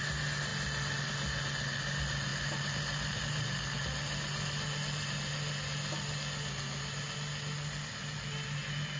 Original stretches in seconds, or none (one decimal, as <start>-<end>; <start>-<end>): 0.0-9.0